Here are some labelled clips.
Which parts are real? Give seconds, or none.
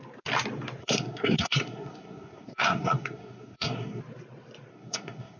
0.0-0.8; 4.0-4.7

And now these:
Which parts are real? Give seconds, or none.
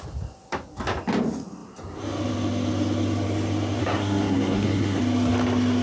0.0-3.8; 5.0-5.8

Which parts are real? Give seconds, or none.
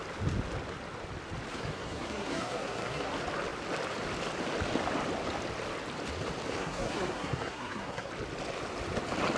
0.0-1.5; 3.1-6.6; 8.1-9.4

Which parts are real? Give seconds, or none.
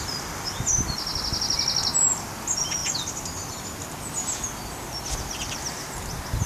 0.0-6.5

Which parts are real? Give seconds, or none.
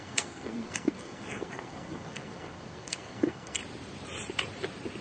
3.6-5.0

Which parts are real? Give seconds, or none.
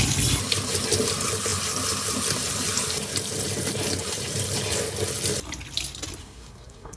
0.0-6.2